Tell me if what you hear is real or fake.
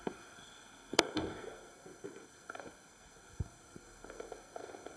fake